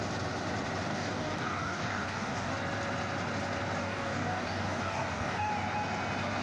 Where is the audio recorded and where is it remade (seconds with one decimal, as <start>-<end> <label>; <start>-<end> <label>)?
0.0-0.9 recorded; 0.9-2.5 remade; 2.5-3.8 recorded; 3.8-5.5 remade; 5.5-6.4 recorded

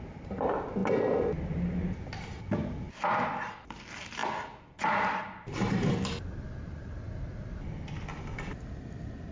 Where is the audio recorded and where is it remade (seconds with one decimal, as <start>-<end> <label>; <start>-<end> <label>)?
0.0-9.3 recorded